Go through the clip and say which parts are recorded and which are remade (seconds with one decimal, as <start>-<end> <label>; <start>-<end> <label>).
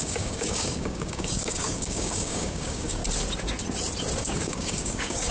0.0-3.0 remade; 3.0-4.2 recorded; 4.2-5.3 remade